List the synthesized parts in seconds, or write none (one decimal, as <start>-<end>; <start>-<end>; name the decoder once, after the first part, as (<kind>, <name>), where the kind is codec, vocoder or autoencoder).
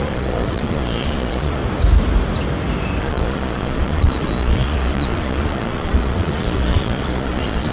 0.0-1.6 (vocoder, Vocos); 3.0-7.7